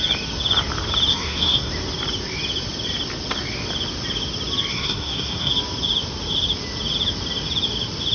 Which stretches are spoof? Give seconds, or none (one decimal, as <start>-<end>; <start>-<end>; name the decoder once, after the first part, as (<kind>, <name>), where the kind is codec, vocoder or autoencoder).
1.1-1.7 (codec, SNAC); 4.7-5.5